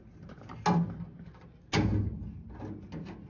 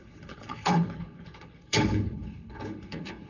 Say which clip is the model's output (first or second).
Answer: second